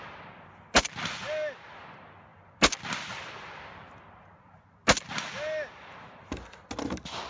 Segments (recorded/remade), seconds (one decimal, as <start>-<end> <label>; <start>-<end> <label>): 0.0-7.3 recorded